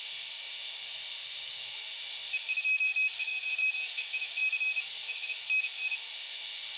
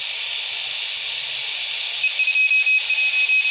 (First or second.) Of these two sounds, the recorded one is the second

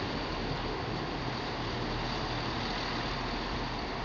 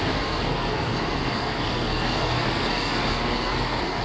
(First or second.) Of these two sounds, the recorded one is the first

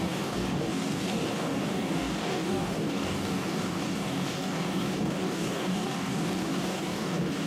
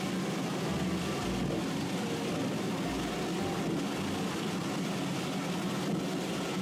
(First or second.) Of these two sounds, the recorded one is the second